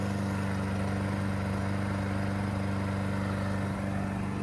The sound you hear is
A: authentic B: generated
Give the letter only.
A